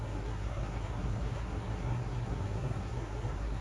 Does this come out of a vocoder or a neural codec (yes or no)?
yes